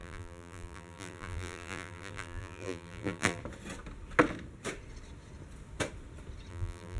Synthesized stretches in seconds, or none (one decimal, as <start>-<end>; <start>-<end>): 0.0-3.4; 6.5-7.0